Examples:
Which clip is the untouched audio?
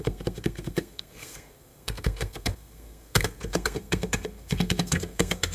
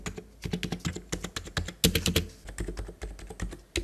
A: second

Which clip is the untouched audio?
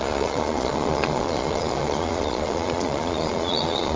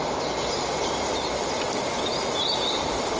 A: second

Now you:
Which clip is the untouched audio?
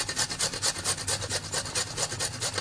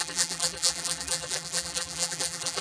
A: first